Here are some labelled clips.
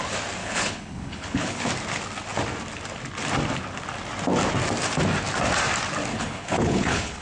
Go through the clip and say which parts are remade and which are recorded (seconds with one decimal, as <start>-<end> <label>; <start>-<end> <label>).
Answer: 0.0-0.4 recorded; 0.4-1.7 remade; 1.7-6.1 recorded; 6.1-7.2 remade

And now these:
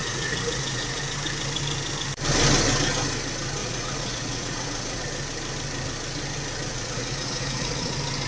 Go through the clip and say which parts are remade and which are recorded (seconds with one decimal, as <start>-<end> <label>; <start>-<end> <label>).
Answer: 0.0-1.0 remade; 1.0-3.6 recorded; 3.6-5.0 remade; 5.0-6.7 recorded; 6.7-7.9 remade; 7.9-8.3 recorded

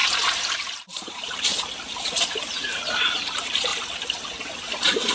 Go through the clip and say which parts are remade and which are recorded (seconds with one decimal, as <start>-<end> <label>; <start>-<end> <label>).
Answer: 0.0-0.8 recorded; 0.8-1.5 remade; 1.5-3.1 recorded; 3.1-3.7 remade; 3.7-5.1 recorded

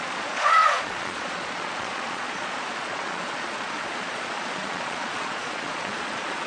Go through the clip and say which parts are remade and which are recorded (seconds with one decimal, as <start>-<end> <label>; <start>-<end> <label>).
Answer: 0.0-6.5 remade

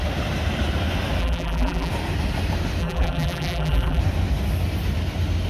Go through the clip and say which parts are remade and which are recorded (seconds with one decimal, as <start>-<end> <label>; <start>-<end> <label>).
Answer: 0.0-1.2 recorded; 1.2-1.9 remade; 1.9-2.8 recorded; 2.8-4.0 remade; 4.0-5.5 recorded

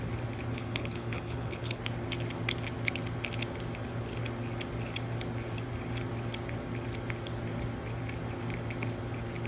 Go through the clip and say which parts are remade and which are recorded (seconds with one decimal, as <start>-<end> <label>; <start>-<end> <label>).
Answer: 0.0-0.6 recorded; 0.6-1.8 remade; 1.8-9.5 recorded

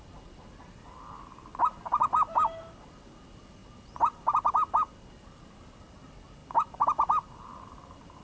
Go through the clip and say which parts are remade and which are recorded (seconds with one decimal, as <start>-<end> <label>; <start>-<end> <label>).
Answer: 0.0-3.6 remade; 3.6-4.5 recorded; 4.5-8.2 remade

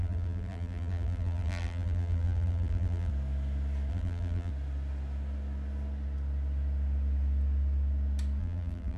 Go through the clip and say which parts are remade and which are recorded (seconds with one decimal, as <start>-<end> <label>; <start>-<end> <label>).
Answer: 0.0-3.1 remade; 3.1-3.9 recorded; 3.9-4.5 remade; 4.5-8.4 recorded; 8.4-9.0 remade